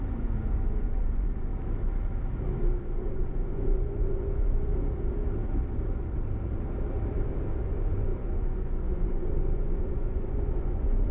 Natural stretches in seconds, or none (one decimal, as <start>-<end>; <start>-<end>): 1.5-2.8; 4.7-7.6

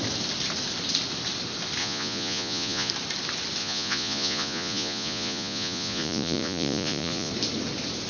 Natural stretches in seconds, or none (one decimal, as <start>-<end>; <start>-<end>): 0.0-1.8; 2.9-3.6; 7.3-8.1

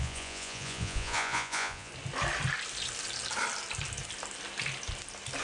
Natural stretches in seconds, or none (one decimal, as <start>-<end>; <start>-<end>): 1.9-5.4

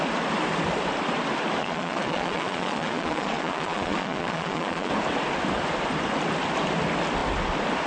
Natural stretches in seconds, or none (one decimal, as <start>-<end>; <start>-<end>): 0.0-1.6; 4.9-7.9

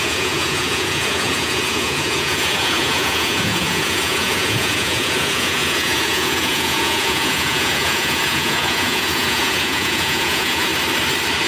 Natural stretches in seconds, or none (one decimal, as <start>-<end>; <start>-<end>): 10.7-11.5

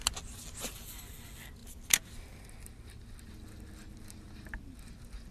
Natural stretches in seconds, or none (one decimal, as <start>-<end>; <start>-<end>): 0.0-5.3

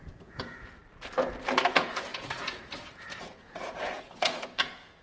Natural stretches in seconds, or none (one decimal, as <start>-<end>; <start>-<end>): 0.8-1.6

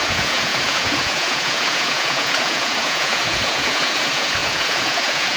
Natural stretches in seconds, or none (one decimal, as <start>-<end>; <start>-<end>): none